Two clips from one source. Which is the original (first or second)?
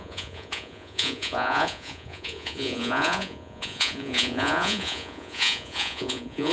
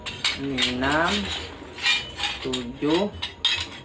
second